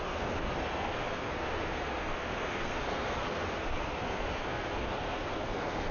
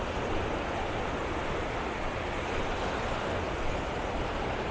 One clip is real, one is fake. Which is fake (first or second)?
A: first